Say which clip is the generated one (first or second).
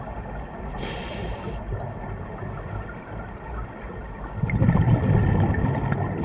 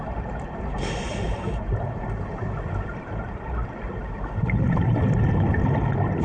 second